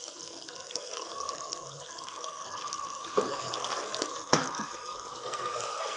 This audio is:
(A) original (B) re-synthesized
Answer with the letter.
B